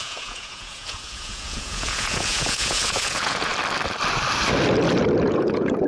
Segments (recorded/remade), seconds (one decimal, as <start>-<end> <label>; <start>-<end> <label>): 0.0-3.5 remade; 3.5-5.3 recorded; 5.3-5.9 remade